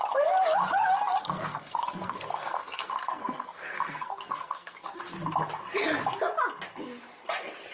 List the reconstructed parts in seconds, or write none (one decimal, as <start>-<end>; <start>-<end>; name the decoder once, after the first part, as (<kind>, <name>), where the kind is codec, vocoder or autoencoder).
1.2-5.0 (codec, SNAC)